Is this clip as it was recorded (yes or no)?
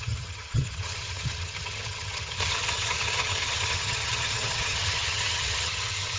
no